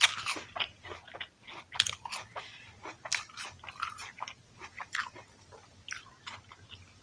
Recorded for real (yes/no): yes